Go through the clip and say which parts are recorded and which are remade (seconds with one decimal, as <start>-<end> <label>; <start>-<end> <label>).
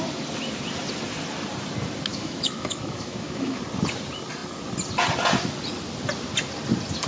0.0-2.1 recorded; 2.1-3.6 remade; 3.6-7.1 recorded